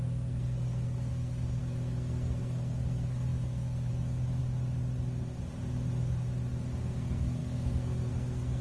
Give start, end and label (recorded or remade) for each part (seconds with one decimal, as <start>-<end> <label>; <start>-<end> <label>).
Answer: 0.0-4.4 remade; 4.4-6.8 recorded; 6.8-8.6 remade

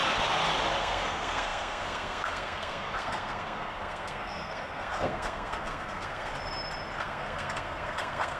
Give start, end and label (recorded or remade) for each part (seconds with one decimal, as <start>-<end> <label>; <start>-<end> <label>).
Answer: 0.0-0.8 recorded; 0.8-6.3 remade; 6.3-7.0 recorded; 7.0-8.4 remade

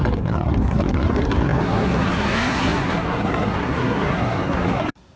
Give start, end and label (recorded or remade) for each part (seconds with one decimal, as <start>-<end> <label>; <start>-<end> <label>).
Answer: 0.0-5.2 remade